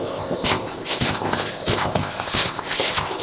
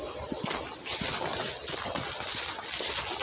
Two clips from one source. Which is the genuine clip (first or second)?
second